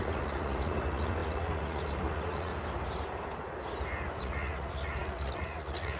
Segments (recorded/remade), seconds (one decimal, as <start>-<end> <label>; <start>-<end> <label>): 0.0-2.5 remade; 2.5-4.2 recorded; 4.2-6.0 remade